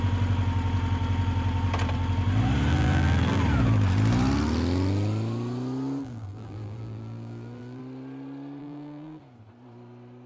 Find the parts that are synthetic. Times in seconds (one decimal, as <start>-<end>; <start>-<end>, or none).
2.7-3.4; 6.0-7.8; 8.6-9.2